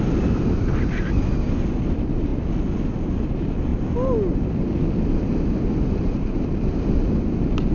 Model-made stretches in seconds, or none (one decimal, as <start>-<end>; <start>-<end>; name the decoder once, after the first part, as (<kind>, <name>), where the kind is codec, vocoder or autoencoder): none